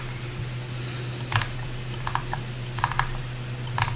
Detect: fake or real real